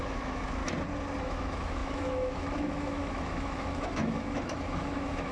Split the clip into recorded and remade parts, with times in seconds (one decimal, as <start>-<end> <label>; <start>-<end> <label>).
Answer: 0.0-0.6 remade; 0.6-1.2 recorded; 1.2-5.3 remade